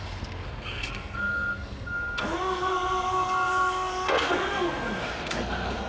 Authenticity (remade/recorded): remade